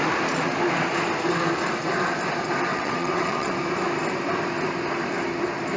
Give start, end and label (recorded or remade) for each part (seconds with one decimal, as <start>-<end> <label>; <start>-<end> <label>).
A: 0.0-2.7 recorded; 2.7-3.5 remade; 3.5-5.8 recorded